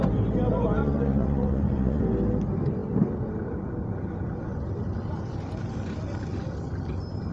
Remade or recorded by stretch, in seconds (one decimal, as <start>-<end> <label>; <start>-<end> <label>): 0.0-0.8 recorded; 0.8-2.0 remade; 2.0-7.3 recorded